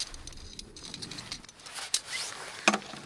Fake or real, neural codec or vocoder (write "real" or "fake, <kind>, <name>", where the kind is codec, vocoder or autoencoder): real